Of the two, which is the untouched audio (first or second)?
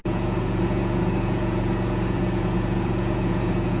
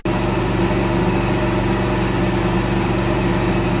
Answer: second